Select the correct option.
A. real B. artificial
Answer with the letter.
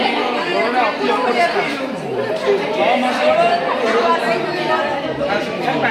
A